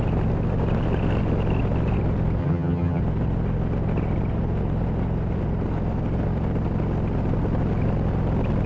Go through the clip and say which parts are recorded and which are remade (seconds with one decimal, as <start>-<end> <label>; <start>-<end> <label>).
0.0-2.4 recorded; 2.4-3.0 remade; 3.0-8.7 recorded